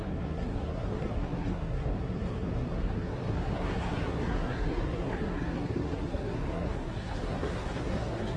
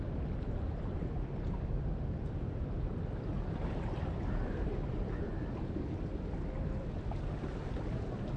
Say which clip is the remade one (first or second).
first